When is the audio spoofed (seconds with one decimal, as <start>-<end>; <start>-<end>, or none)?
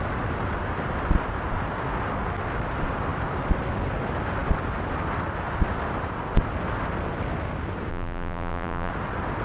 7.9-8.9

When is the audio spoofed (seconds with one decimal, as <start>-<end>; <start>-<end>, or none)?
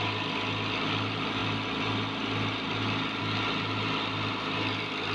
none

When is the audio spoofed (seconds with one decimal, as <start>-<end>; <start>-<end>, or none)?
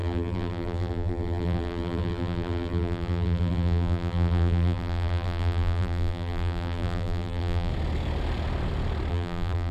0.0-7.7; 9.1-9.7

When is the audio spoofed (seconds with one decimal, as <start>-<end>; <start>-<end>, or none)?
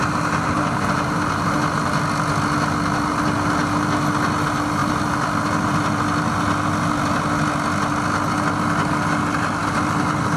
9.6-10.4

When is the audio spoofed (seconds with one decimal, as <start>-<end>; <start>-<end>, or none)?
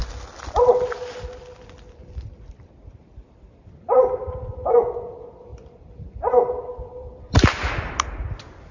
5.5-7.7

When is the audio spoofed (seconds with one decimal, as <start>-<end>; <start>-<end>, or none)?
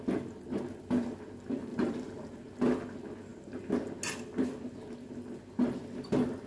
1.7-2.5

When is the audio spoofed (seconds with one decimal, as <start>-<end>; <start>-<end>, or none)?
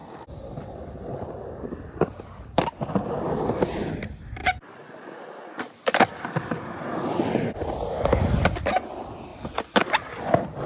0.0-3.1; 4.4-6.6; 9.3-10.1